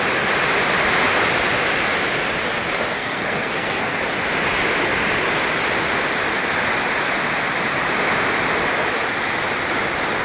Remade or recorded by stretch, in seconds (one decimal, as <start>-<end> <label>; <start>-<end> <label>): 0.0-2.9 recorded; 2.9-4.0 remade; 4.0-10.2 recorded